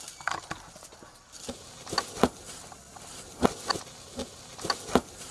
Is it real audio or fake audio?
real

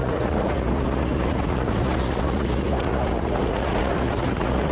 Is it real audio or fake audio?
fake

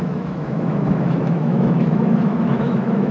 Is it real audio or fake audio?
fake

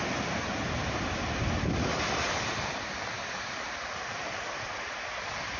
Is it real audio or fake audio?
real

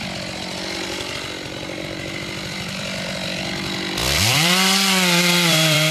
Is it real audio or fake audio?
fake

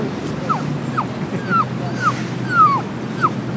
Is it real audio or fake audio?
real